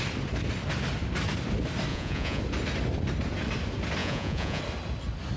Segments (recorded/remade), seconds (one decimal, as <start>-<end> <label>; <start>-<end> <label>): 0.0-1.9 recorded; 1.9-2.4 remade; 2.4-4.0 recorded; 4.0-4.6 remade; 4.6-5.4 recorded